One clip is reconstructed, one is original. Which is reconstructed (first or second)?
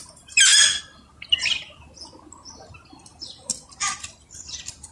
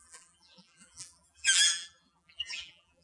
second